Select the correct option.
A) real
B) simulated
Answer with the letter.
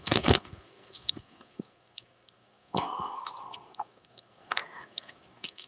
B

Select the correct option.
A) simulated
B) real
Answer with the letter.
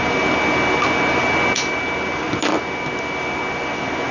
B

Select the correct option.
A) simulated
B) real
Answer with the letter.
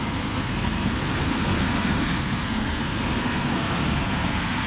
A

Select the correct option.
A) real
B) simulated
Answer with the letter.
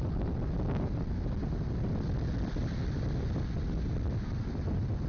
B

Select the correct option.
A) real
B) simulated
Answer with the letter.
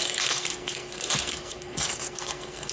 B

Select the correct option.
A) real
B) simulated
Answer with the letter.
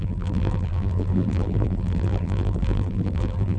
B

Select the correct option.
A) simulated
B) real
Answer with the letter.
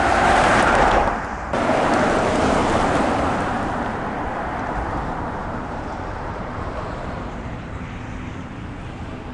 A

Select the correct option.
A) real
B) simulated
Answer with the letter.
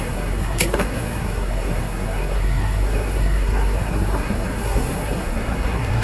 B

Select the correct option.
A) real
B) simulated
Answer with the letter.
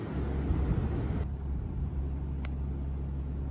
A